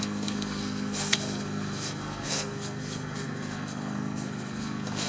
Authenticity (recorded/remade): remade